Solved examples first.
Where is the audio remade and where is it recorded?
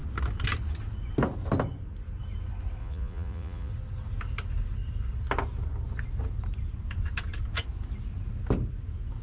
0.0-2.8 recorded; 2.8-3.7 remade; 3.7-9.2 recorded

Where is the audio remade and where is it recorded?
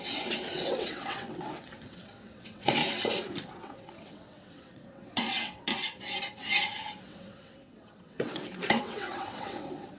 0.0-2.8 remade; 2.8-3.5 recorded; 3.5-5.7 remade; 5.7-7.0 recorded; 7.0-10.0 remade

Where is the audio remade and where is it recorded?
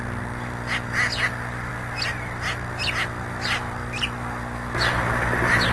0.0-5.7 recorded